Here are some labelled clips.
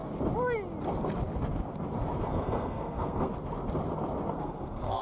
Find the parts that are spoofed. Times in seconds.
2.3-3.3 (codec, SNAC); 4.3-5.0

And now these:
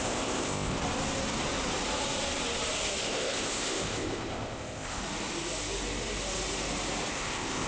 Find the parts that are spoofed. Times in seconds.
0.0-0.8 (codec, ZipCodec); 3.0-5.0; 7.1-7.7

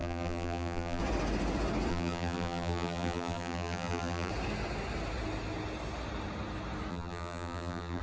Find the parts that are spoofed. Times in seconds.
0.0-1.0 (vocoder, BigVGAN v2); 1.9-4.3; 6.9-8.0

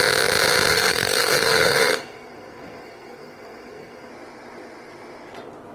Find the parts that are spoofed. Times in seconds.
0.7-4.1 (codec, SNAC)